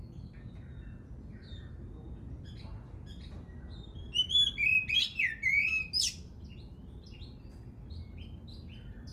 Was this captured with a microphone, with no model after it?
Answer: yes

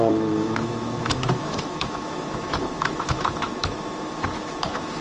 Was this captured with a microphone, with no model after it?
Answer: no